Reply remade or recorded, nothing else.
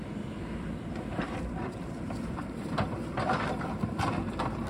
remade